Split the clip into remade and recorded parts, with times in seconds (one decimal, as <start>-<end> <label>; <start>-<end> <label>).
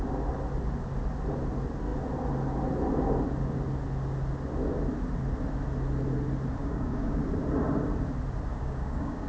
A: 0.0-6.6 recorded; 6.6-7.2 remade; 7.2-8.5 recorded; 8.5-9.3 remade